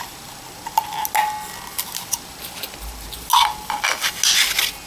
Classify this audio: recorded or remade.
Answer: recorded